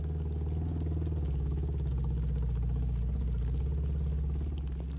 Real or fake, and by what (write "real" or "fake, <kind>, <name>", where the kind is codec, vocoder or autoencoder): real